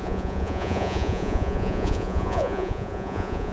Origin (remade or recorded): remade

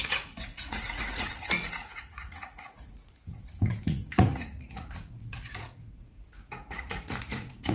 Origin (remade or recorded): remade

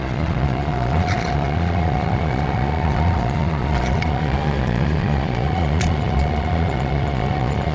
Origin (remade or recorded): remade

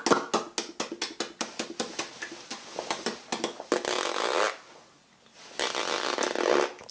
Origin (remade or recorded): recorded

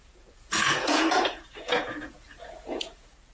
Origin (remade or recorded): remade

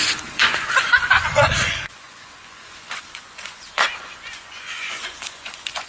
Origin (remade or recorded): remade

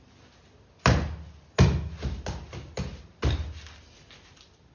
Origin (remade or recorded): recorded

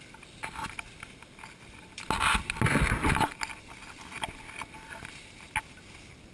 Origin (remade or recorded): recorded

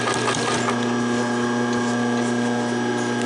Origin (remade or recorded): recorded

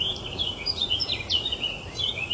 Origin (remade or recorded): remade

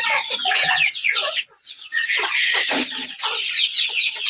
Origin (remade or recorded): remade